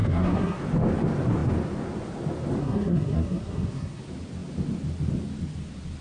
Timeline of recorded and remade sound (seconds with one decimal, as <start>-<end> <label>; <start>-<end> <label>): 0.0-0.6 remade; 0.6-2.6 recorded; 2.6-4.0 remade; 4.0-6.0 recorded